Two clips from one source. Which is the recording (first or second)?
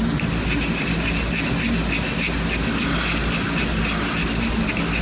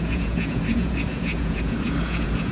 first